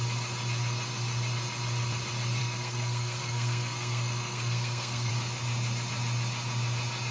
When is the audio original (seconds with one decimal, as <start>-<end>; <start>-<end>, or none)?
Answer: 0.0-2.4; 5.1-7.1

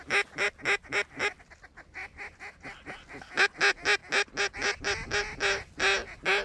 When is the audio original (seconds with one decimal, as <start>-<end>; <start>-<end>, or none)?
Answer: 0.0-6.4